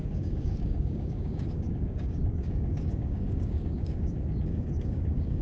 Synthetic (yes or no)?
yes